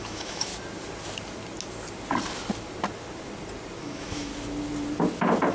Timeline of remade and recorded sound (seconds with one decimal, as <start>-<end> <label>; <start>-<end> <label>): 0.0-0.5 remade; 0.5-3.8 recorded; 3.8-4.3 remade; 4.3-5.5 recorded